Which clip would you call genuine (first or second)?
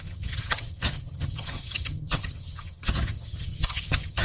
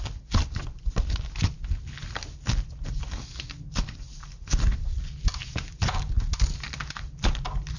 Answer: second